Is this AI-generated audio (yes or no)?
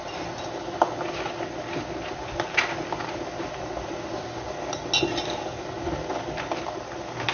no